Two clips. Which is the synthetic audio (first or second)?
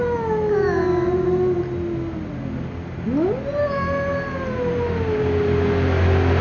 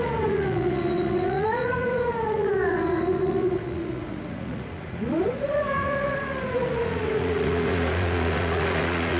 second